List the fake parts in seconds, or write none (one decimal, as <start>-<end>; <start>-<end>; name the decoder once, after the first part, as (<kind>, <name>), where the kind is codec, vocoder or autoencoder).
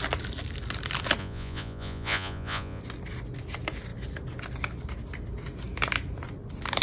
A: 1.2-2.8 (vocoder, Vocos)